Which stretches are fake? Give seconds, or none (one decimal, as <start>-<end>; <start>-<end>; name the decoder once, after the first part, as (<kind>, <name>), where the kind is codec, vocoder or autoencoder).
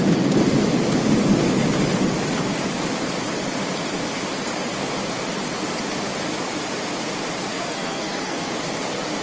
7.5-8.5 (codec, SNAC)